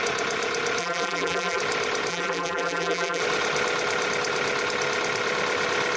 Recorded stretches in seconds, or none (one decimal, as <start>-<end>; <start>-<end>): 0.0-0.8; 1.6-2.1; 3.2-6.0